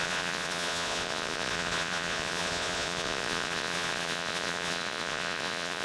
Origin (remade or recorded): remade